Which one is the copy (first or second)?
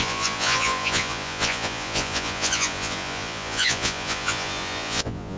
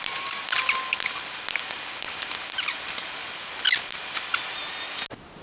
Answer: first